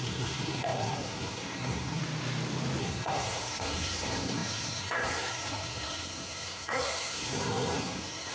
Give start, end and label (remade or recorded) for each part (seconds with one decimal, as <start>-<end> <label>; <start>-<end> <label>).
0.0-2.0 remade; 2.0-2.8 recorded; 2.8-8.3 remade